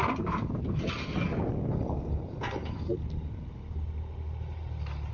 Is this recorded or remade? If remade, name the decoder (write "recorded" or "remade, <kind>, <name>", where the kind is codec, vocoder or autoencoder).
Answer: recorded